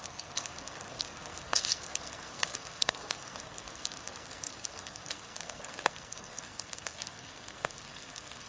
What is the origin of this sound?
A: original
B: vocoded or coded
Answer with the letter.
B